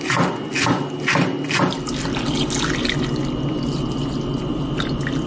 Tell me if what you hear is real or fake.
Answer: real